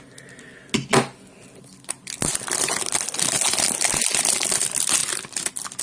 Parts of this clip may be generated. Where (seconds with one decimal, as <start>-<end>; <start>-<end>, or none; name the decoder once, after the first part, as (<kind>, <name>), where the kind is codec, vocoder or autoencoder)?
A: none